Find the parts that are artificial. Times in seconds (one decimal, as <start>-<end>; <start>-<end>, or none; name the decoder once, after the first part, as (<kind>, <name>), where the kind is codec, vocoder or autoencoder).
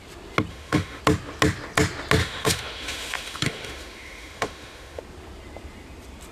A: 0.5-1.0 (autoencoder, DAC-VAE); 2.2-5.0